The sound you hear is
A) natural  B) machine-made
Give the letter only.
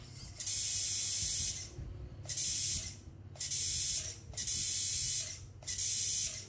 A